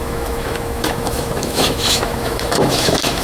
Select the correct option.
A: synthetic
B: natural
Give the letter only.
A